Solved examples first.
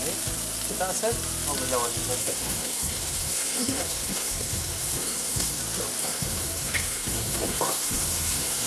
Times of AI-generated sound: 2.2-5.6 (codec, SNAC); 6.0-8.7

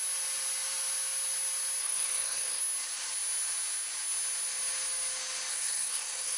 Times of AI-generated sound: 1.8-2.6 (codec, SNAC); 5.5-6.4

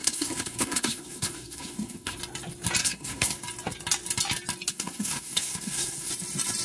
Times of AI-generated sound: 0.0-2.2 (codec, SNAC); 2.8-3.4; 4.7-6.1

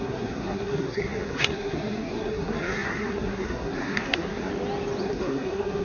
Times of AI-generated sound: 0.0-4.5 (codec, SNAC); 5.0-5.8

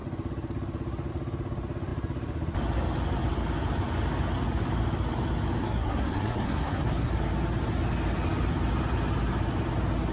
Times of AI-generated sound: 5.6-7.1 (codec, SNAC)

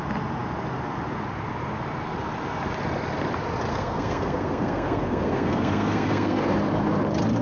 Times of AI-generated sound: 3.7-6.4 (codec, SNAC)

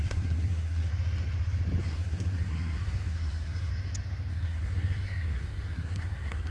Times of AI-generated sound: 0.0-0.9 (codec, SNAC); 1.8-3.7; 4.3-6.5